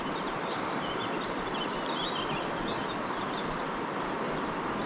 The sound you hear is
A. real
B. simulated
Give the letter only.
A